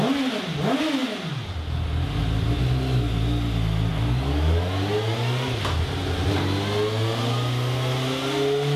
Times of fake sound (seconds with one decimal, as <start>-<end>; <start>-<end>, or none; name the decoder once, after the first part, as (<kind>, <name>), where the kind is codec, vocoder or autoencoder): none